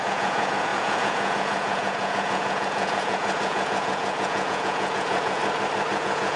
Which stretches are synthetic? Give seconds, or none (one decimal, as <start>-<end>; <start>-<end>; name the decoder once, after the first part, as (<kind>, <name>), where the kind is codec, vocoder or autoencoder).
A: 0.0-5.4 (vocoder, Vocos); 6.0-6.4